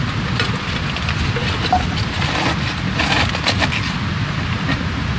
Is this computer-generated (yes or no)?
no